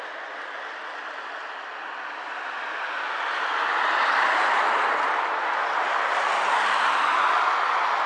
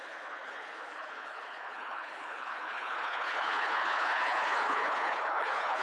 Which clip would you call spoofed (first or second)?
second